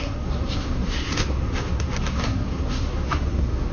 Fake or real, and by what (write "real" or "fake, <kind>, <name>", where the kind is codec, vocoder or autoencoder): fake, codec, SNAC